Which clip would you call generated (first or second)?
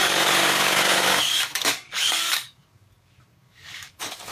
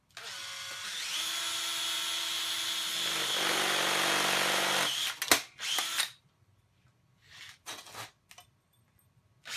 first